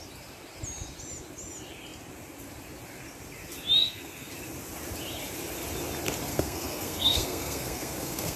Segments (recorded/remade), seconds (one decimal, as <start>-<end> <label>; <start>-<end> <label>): 0.0-3.8 recorded; 3.8-4.3 remade; 4.3-6.3 recorded; 6.3-8.4 remade